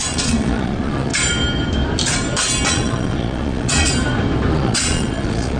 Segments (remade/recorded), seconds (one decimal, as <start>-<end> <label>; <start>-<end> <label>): 0.0-1.1 remade; 1.1-2.7 recorded; 2.7-3.9 remade; 3.9-4.5 recorded; 4.5-5.6 remade